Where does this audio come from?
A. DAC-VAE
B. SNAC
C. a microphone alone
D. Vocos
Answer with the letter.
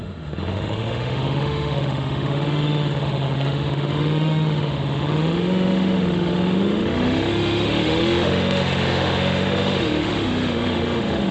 A